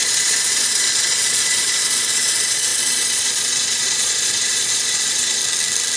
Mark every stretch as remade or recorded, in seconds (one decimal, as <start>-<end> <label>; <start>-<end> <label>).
0.0-5.4 remade; 5.4-6.0 recorded